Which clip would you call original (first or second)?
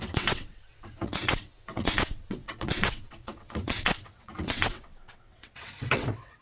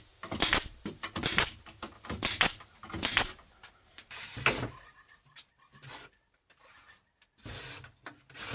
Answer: second